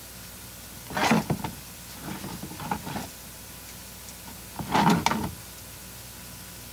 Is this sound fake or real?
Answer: real